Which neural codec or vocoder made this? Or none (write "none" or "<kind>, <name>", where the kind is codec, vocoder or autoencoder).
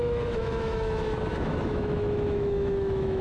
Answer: autoencoder, DAC-VAE